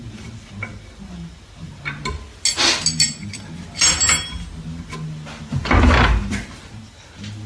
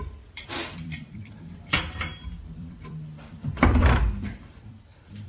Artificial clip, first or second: second